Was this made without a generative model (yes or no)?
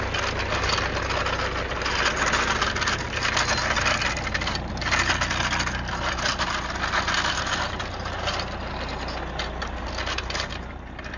yes